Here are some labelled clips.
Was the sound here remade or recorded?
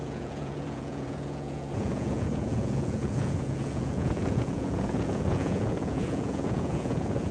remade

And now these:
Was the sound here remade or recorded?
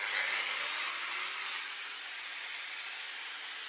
recorded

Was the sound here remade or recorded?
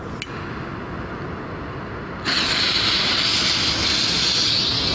recorded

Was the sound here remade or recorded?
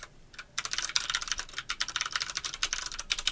remade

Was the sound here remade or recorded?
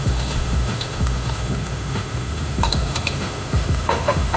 remade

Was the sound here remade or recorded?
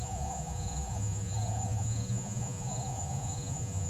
remade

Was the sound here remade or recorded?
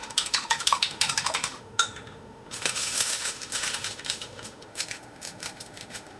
remade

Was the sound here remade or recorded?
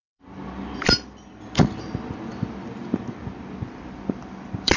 remade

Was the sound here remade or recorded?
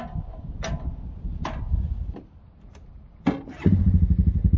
recorded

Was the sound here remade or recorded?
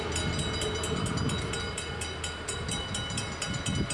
recorded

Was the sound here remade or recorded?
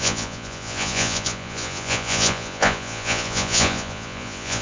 remade